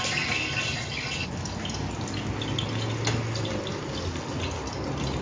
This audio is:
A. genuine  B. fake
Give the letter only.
A